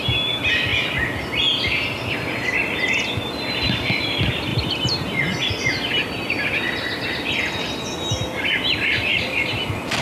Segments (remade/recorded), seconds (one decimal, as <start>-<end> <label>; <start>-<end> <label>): 0.0-4.5 recorded; 4.5-5.5 remade; 5.5-9.1 recorded; 9.1-10.0 remade